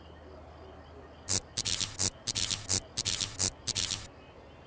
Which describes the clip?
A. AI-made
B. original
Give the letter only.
B